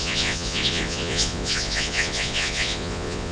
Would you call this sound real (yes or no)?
no